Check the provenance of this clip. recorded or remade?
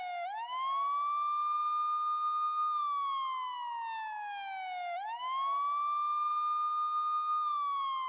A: recorded